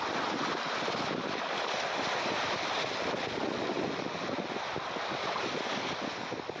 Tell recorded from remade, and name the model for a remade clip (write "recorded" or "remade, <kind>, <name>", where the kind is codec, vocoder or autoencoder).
recorded